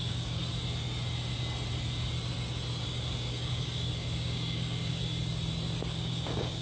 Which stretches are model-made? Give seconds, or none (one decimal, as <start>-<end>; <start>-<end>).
0.0-0.4; 2.8-5.0; 5.9-6.6